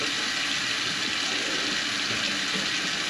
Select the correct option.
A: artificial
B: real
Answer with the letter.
B